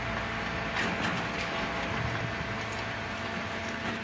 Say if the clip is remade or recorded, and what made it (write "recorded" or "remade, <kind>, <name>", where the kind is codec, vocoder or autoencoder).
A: recorded